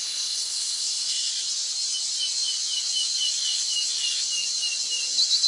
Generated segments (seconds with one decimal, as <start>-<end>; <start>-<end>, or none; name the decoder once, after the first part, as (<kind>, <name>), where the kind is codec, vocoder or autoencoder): 0.0-1.3 (codec, SNAC)